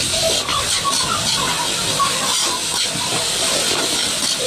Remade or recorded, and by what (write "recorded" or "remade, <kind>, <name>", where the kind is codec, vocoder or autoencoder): recorded